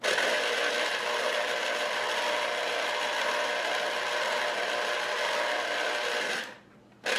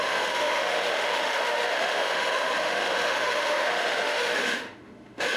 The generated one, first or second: second